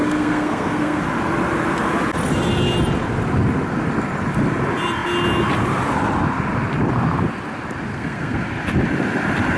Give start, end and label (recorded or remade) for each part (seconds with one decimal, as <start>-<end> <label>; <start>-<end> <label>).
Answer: 0.0-1.0 remade; 1.0-7.9 recorded; 7.9-8.5 remade; 8.5-9.6 recorded